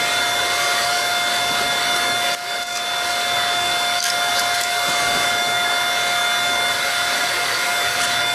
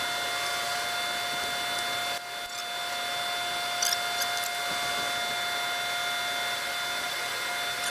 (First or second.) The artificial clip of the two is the first